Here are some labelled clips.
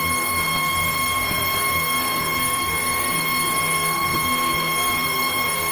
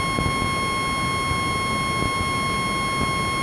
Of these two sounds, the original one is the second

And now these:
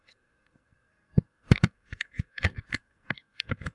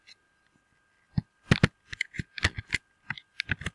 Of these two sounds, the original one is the second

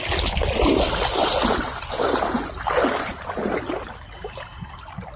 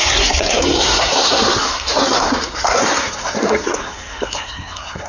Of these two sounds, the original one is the first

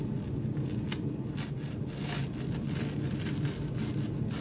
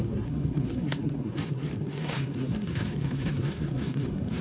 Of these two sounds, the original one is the first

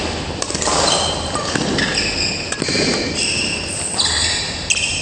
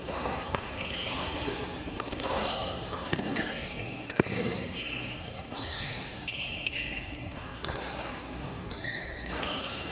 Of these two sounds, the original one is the first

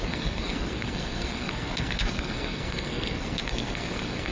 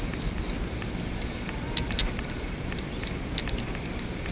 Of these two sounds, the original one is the second